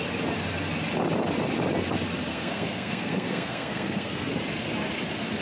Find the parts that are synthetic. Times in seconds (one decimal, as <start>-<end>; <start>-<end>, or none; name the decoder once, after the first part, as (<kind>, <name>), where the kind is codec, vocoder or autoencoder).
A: 2.3-4.3 (codec, SNAC)